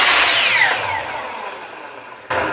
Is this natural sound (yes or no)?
yes